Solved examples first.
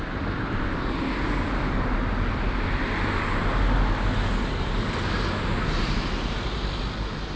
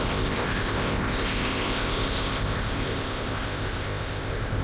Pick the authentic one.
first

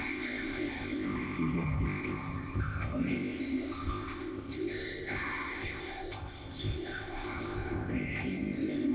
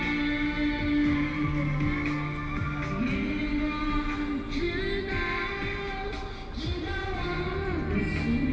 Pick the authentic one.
second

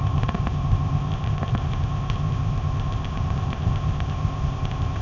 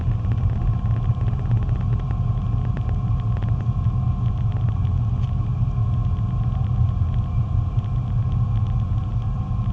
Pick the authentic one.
second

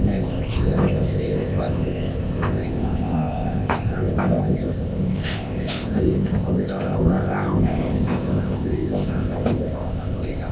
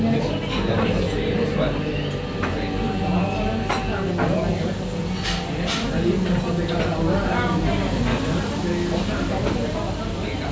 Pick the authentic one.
second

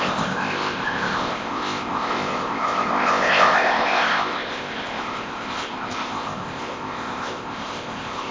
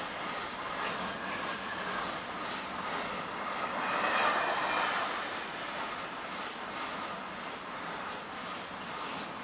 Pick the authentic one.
second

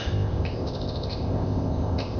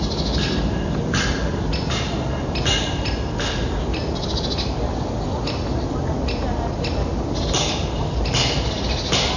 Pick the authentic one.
second